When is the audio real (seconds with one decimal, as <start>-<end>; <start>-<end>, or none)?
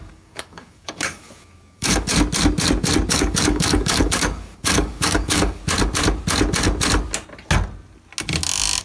2.1-3.1; 5.6-8.8